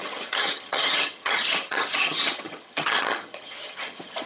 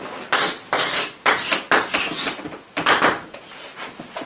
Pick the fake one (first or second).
first